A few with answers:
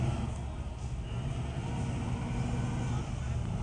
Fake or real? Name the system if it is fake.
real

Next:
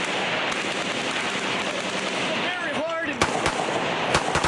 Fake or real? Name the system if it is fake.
real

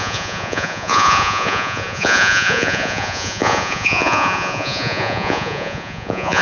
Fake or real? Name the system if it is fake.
fake, vocoder, Vocos